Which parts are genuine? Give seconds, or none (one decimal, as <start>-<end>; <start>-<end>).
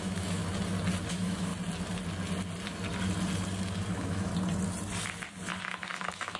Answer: 0.4-1.1; 1.5-3.9; 4.3-5.6